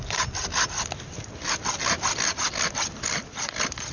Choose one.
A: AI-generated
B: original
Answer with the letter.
B